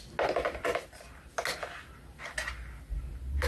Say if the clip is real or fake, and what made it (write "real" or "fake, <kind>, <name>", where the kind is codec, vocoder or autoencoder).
real